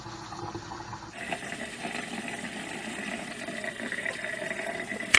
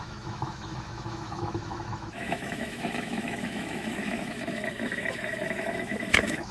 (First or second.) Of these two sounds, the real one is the first